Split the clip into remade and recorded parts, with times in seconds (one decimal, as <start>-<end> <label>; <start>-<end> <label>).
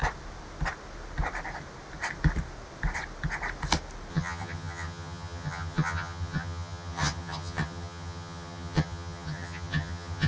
0.0-4.1 recorded; 4.1-10.3 remade